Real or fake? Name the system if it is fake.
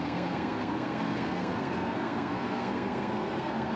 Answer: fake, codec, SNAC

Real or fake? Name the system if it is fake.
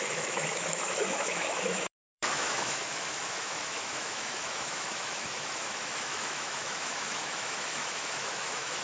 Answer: fake, autoencoder, DAC-VAE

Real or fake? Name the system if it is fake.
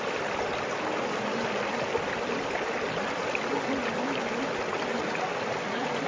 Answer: real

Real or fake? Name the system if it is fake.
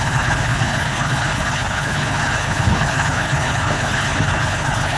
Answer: fake, codec, HILCodec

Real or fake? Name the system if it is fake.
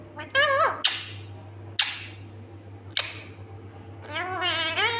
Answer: real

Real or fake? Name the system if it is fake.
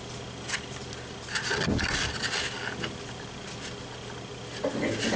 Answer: real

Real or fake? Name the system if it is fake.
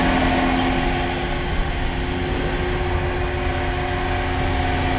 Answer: real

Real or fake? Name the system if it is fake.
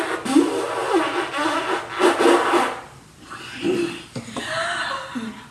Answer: real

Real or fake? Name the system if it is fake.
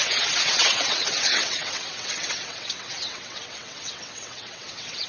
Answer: fake, vocoder, WaveNeXt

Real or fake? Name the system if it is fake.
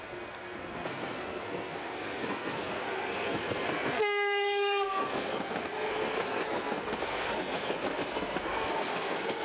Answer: fake, codec, SNAC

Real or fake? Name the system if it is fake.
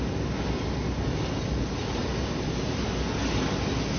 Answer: real